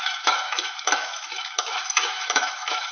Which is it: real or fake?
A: fake